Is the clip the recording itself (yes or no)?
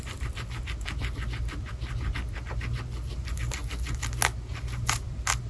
yes